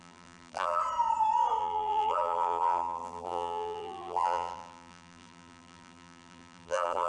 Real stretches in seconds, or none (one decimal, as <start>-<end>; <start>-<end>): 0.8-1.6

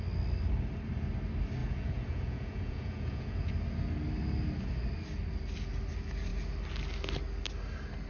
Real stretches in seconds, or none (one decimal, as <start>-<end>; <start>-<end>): 0.0-1.6; 3.5-8.1

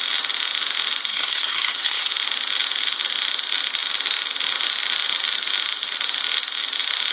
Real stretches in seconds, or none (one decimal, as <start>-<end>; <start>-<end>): 0.0-1.1; 2.1-7.1

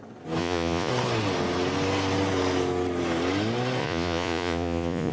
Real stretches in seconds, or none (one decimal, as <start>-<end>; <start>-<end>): 0.0-0.4; 0.9-3.8

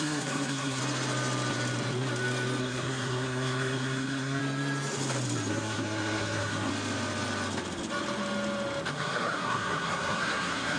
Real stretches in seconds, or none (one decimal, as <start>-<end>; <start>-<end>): 0.8-2.6; 4.4-5.5; 6.7-8.9

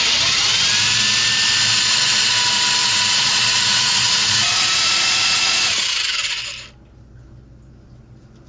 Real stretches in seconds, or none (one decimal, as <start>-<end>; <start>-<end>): 0.0-2.8; 6.4-8.5